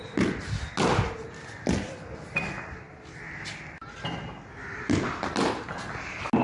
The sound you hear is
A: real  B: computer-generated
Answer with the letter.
A